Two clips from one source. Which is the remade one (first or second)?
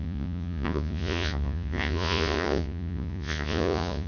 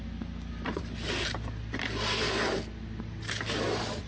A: first